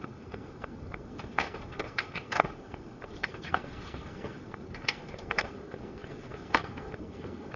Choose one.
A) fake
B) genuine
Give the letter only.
A